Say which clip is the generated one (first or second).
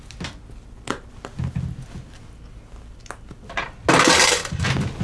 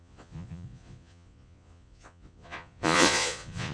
second